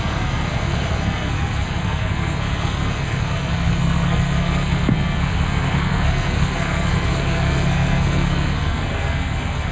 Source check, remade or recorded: remade